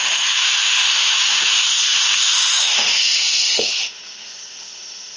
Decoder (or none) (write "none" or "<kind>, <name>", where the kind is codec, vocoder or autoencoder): autoencoder, DAC-VAE